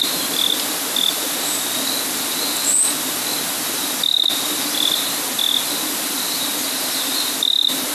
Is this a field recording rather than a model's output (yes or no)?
yes